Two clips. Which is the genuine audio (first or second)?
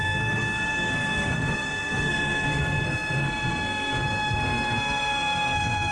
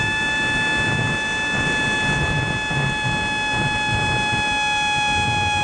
second